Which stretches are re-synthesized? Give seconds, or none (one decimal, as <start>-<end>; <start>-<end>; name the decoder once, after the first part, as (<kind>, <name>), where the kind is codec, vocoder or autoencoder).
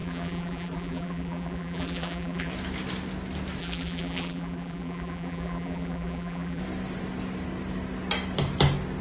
0.0-2.5 (vocoder, BigVGAN v2); 3.6-6.6